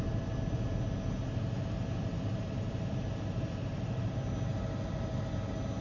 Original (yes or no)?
yes